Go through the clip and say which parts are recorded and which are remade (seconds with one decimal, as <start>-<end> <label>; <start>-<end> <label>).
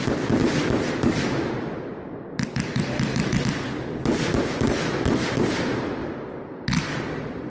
0.0-7.5 recorded